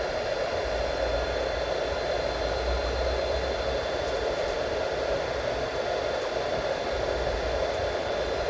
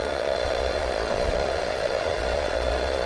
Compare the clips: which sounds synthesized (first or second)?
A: second